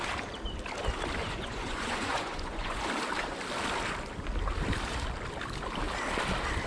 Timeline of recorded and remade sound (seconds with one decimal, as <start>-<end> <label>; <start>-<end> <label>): 0.0-1.2 recorded; 1.2-2.8 remade; 2.8-6.7 recorded

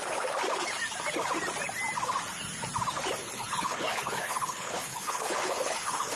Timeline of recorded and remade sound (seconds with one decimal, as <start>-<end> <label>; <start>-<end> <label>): 0.0-3.2 recorded; 3.2-6.2 remade

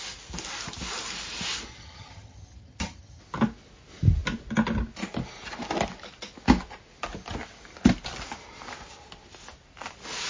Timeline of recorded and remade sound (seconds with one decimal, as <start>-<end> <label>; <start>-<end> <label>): 0.0-1.7 recorded; 1.7-3.2 remade; 3.2-10.3 recorded

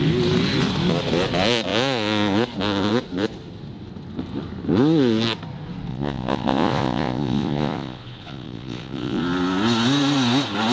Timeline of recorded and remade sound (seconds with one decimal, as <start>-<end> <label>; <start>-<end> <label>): 0.0-5.9 recorded; 5.9-9.2 remade; 9.2-10.7 recorded

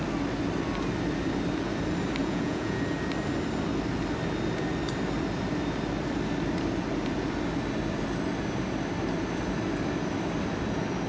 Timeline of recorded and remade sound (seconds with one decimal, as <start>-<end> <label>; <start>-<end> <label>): 0.0-2.2 recorded; 2.2-2.8 remade; 2.8-11.1 recorded

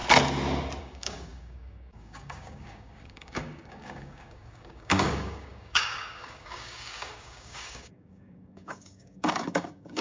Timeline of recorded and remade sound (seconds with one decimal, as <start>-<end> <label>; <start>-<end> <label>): 0.0-0.8 recorded; 0.8-10.0 remade

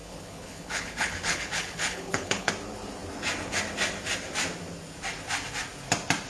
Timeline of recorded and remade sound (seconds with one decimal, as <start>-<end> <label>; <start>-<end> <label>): 0.0-2.5 remade; 2.5-6.3 recorded